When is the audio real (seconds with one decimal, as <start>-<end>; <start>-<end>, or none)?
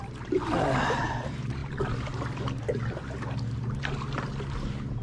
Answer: 0.0-5.0